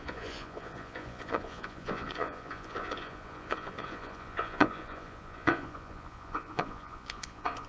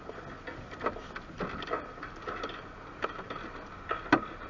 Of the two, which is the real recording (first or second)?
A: second